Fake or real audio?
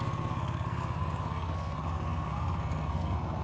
fake